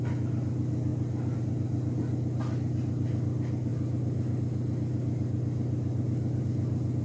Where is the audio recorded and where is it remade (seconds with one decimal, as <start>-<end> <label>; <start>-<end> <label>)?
0.0-7.0 recorded